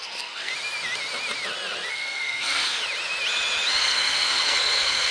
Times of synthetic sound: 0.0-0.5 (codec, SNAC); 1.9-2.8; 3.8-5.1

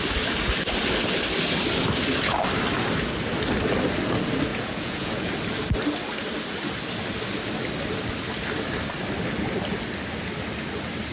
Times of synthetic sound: 4.5-5.3 (vocoder, Vocos)

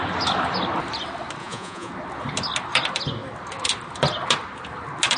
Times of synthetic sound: 1.4-1.9 (vocoder, Vocos)

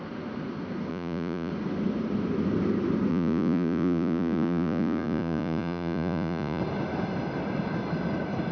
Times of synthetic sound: 0.9-1.5 (vocoder, Vocos); 3.1-6.6

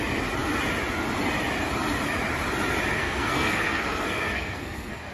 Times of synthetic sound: 2.9-5.1 (codec, SNAC)

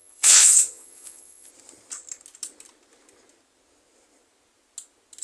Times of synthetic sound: 0.0-1.5 (vocoder, Vocos)

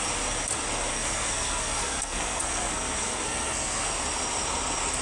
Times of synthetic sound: 0.9-3.9 (codec, SNAC)

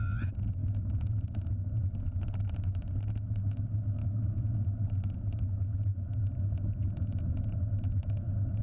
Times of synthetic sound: 4.0-4.5 (autoencoder, DAC-VAE)